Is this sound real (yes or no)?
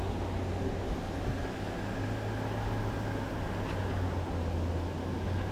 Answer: yes